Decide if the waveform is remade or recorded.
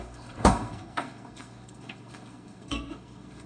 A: remade